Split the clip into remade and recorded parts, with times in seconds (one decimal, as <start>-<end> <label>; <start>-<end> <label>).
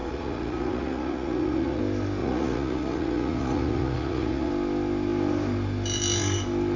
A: 0.0-1.8 remade; 1.8-2.2 recorded; 2.2-4.5 remade; 4.5-6.8 recorded